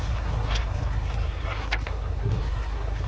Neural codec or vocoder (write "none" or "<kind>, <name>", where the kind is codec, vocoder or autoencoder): codec, SNAC